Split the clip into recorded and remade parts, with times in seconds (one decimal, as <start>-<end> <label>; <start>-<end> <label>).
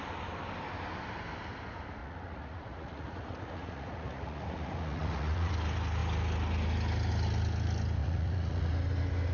0.0-2.0 recorded; 2.0-5.5 remade; 5.5-8.0 recorded; 8.0-8.7 remade; 8.7-9.3 recorded